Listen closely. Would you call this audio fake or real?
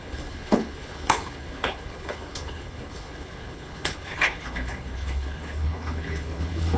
fake